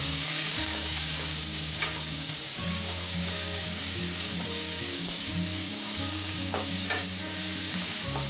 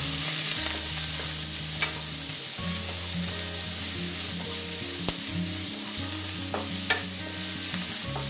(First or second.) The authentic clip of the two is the second